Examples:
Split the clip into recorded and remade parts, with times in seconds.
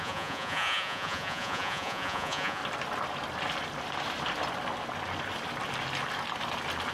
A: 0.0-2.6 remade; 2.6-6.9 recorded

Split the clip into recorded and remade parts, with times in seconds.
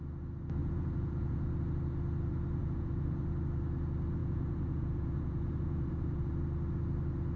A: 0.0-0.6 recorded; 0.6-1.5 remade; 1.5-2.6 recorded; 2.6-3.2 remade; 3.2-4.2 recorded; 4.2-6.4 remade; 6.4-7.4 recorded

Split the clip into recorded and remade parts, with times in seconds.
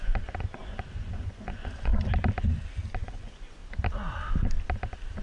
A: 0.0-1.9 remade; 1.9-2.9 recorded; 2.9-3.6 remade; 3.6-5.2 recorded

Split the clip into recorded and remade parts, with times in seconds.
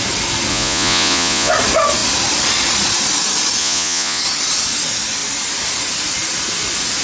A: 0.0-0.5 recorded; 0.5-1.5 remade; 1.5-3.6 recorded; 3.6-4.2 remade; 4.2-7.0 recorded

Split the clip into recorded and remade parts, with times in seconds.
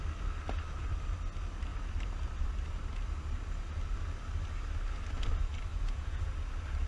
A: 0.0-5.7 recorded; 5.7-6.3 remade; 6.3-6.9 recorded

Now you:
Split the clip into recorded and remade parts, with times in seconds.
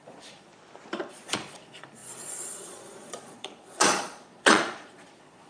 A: 0.0-0.5 remade; 0.5-1.1 recorded; 1.1-5.5 remade